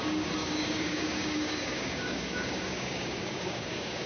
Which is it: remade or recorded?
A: remade